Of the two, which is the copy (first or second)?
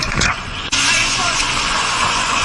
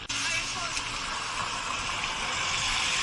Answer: first